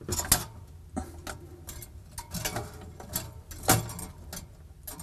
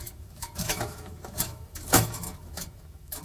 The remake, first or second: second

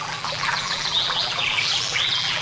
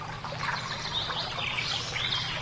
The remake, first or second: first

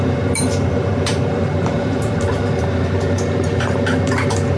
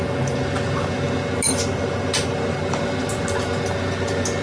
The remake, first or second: first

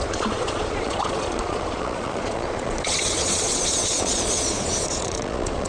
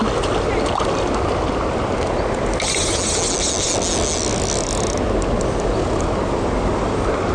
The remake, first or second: first